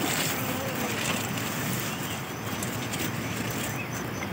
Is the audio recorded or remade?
recorded